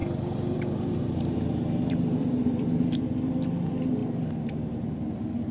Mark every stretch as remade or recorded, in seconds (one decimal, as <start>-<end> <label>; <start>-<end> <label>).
0.0-3.0 remade; 3.0-5.5 recorded